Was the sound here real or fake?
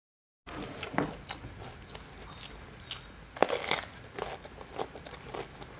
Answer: real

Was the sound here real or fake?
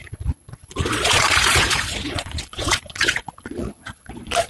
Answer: fake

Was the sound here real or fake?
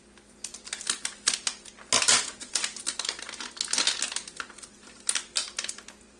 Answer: real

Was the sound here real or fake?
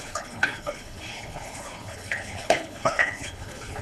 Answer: fake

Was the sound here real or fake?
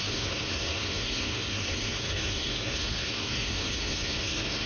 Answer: fake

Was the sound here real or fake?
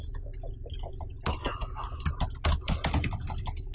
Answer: real